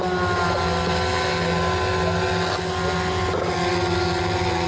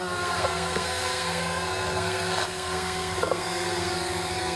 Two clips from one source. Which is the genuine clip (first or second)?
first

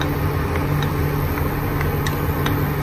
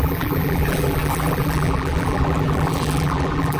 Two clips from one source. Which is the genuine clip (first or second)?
first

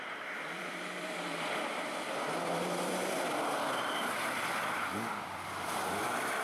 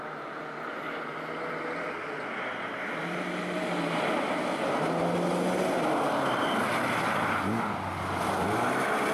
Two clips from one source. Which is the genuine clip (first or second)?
second